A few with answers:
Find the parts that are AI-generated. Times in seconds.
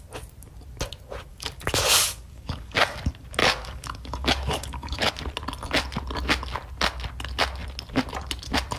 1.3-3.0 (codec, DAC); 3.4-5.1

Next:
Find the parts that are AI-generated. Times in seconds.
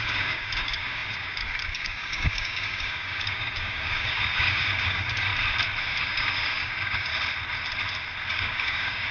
0.0-5.3 (codec, DAC); 6.0-7.1; 8.3-9.1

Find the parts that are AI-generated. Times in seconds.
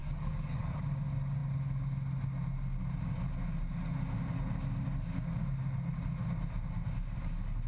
0.0-0.8 (codec, DAC)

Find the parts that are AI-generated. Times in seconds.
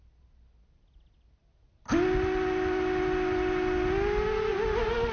none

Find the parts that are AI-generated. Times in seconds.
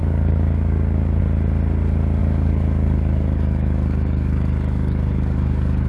0.0-1.2 (codec, DAC); 2.2-5.9